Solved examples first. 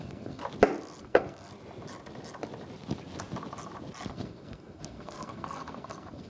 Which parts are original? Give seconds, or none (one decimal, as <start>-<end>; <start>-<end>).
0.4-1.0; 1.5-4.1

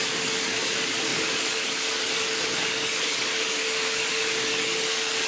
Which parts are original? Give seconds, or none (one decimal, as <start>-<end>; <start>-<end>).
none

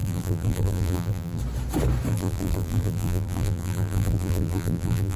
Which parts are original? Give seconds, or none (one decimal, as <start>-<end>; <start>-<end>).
1.4-2.1